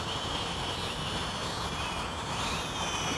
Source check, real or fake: real